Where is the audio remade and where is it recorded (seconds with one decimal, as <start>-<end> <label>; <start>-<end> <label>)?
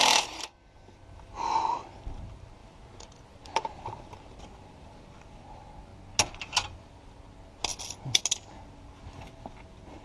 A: 0.0-2.6 recorded; 2.6-5.0 remade; 5.0-10.0 recorded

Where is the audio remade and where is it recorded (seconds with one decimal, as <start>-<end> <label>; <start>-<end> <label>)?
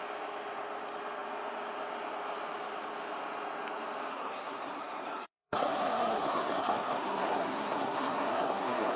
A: 0.0-4.1 recorded; 4.1-9.0 remade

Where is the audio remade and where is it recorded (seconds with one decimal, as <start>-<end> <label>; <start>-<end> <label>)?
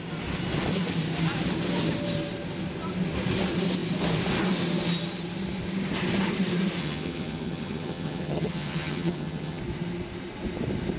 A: 0.0-6.8 recorded; 6.8-9.6 remade; 9.6-11.0 recorded